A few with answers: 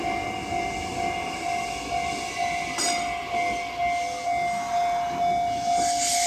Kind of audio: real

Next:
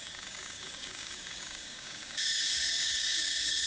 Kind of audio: fake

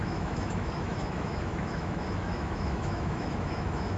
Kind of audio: fake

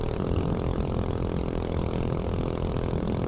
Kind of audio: fake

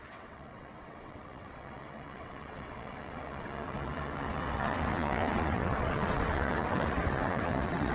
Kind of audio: fake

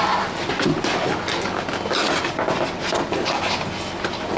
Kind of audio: real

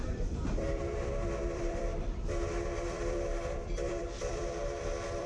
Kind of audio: fake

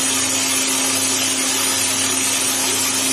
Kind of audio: real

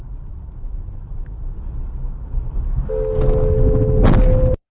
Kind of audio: real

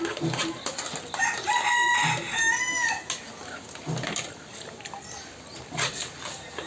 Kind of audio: real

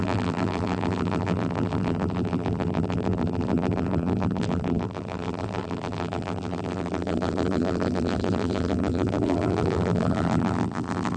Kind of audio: fake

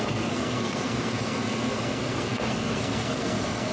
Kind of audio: fake